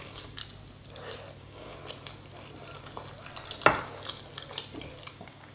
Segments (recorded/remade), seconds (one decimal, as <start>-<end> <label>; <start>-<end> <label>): 0.0-0.4 remade; 0.4-1.4 recorded; 1.4-1.8 remade; 1.8-5.1 recorded; 5.1-5.5 remade